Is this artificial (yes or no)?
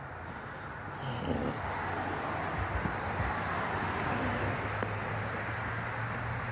no